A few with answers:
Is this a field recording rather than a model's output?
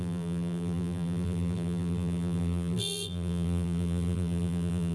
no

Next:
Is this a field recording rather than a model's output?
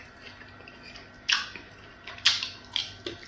yes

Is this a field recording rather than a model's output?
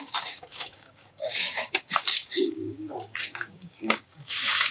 no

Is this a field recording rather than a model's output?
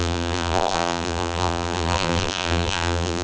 no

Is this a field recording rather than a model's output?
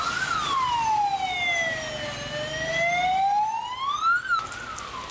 yes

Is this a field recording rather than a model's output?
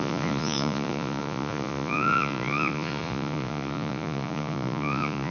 no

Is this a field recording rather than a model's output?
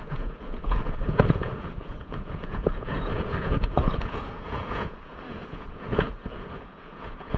no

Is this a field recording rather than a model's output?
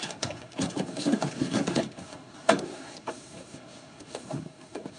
no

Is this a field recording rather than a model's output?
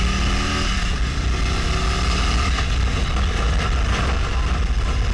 yes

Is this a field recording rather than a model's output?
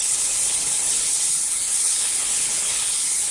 no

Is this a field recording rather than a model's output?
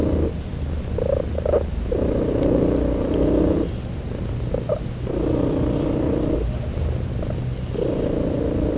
yes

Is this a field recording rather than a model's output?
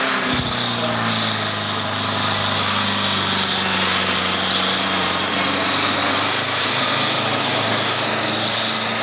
yes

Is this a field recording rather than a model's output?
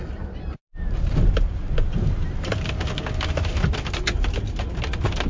yes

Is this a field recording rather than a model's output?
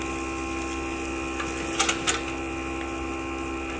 yes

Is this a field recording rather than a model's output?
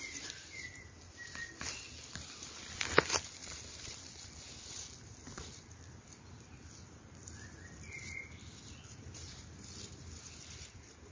yes